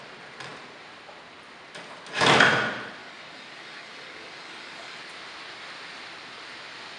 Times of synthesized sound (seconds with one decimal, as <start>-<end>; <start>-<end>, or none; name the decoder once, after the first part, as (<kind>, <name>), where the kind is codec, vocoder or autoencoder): 3.0-5.0 (codec, DAC)